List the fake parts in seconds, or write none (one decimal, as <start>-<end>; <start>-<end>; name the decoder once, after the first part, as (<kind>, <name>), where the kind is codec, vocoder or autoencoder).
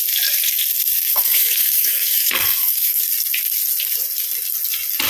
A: 1.1-3.0 (codec, SNAC)